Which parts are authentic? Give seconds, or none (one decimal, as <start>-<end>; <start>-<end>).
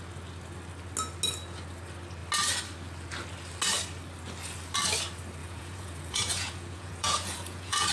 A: 0.0-5.4